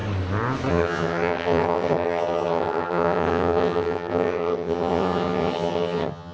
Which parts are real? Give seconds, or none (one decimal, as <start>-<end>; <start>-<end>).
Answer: 0.0-0.7